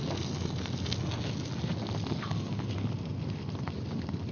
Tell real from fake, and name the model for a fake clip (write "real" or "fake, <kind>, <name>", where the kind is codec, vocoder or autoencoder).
real